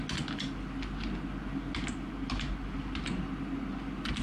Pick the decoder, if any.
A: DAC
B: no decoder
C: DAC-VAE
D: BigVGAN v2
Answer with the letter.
B